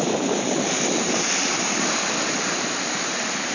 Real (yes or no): no